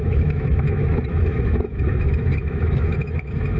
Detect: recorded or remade remade